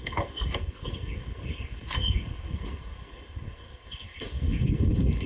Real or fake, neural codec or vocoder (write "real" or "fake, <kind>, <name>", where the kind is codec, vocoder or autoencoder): fake, codec, SNAC